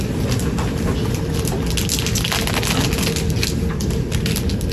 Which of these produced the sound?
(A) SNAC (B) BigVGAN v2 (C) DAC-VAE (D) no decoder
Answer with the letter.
D